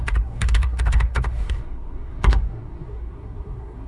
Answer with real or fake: fake